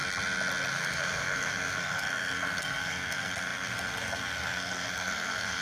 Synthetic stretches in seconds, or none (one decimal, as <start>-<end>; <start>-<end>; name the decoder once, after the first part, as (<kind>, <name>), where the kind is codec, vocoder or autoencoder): 0.7-5.6 (codec, SNAC)